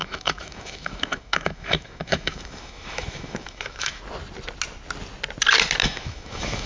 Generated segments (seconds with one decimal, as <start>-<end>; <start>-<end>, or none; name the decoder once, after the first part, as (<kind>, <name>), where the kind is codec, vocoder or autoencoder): 0.0-4.0 (autoencoder, DAC-VAE); 5.8-6.7